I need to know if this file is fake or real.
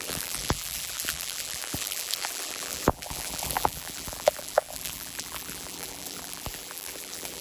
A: fake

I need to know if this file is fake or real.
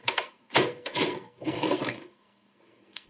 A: fake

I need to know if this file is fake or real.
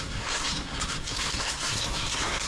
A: fake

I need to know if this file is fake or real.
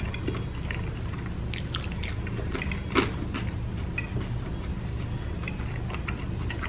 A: real